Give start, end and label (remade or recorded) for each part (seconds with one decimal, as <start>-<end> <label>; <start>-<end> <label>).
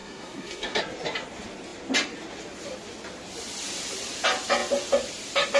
0.0-0.8 remade; 0.8-5.6 recorded